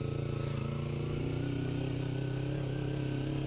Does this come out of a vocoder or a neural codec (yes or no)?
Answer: no